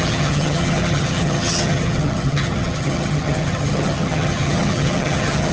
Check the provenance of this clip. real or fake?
fake